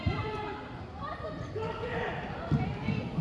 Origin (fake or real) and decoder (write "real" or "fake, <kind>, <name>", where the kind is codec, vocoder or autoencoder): fake, vocoder, BigVGAN v2